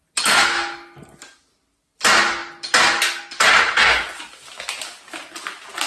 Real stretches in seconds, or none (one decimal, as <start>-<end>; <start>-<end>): 0.0-5.9